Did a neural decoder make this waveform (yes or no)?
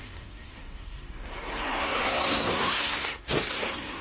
yes